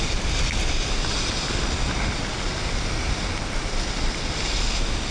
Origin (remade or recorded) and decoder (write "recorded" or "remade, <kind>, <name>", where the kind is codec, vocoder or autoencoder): recorded